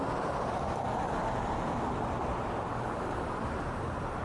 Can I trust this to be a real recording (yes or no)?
yes